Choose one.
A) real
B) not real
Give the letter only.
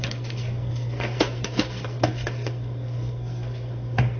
B